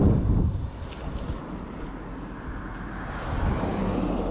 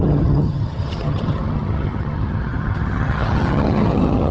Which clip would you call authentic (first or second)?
first